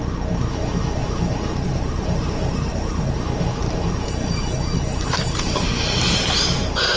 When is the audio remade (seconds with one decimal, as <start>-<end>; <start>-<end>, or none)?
1.0-3.0; 3.5-6.2

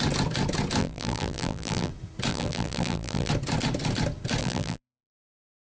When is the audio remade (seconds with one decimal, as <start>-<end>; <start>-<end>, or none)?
0.8-1.9; 2.3-3.3; 4.4-5.7